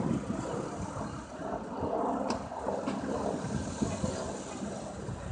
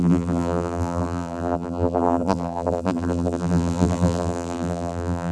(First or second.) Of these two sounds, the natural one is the first